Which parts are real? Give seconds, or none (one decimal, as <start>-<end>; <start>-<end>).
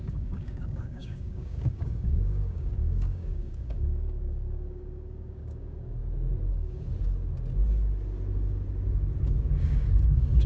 6.0-6.5; 6.9-9.4